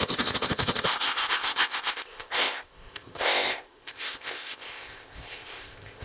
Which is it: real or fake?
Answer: fake